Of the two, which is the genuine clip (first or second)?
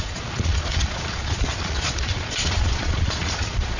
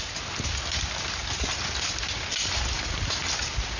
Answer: second